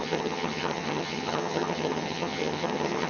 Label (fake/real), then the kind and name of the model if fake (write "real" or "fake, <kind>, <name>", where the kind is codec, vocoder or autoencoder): fake, vocoder, HiFi-GAN